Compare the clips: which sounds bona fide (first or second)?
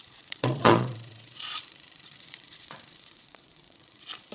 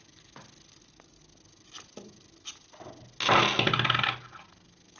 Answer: second